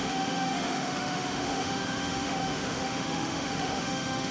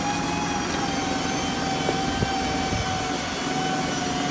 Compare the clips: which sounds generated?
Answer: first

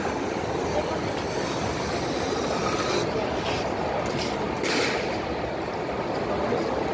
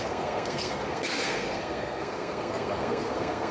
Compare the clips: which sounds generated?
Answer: second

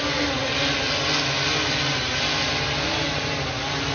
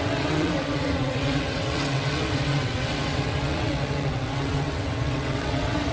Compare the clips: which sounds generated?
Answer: second